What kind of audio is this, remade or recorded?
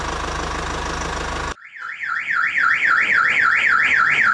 recorded